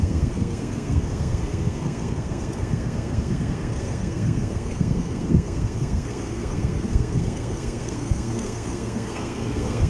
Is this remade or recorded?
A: remade